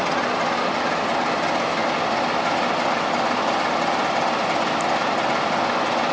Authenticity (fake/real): real